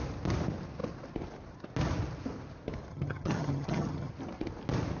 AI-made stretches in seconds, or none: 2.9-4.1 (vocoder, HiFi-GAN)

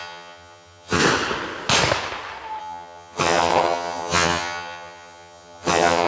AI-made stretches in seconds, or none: 0.0-1.0 (vocoder, HiFi-GAN); 2.6-6.1

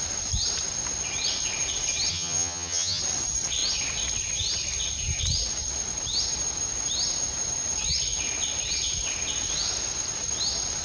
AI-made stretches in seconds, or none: 2.1-3.0 (vocoder, HiFi-GAN)

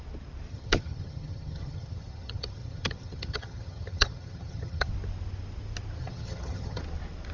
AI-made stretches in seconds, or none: 0.5-4.9 (vocoder, HiFi-GAN); 6.0-6.8

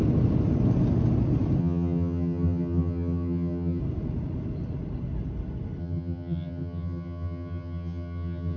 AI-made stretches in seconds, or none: 1.6-3.8 (vocoder, HiFi-GAN); 5.8-8.6

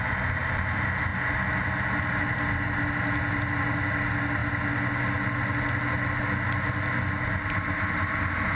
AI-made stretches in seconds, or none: none

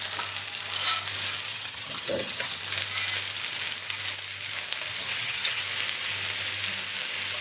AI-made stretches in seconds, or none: 1.5-2.6 (vocoder, HiFi-GAN); 4.9-5.6

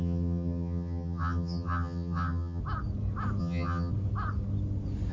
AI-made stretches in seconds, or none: 0.0-2.6 (vocoder, HiFi-GAN); 3.4-3.9